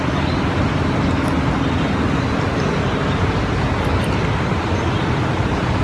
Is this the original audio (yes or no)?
yes